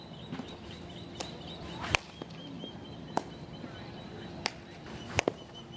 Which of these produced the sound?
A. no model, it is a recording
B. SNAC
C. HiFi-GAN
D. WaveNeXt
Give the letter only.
A